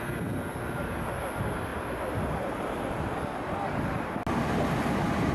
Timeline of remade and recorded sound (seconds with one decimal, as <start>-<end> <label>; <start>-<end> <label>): 0.0-5.3 recorded